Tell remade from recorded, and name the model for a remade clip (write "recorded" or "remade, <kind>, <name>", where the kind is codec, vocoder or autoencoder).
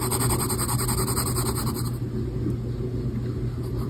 recorded